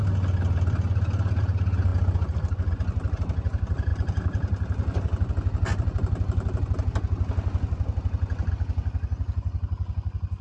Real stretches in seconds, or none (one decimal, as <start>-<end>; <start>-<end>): 0.0-10.4